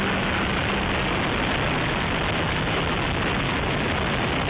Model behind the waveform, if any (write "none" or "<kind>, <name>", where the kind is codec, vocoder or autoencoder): none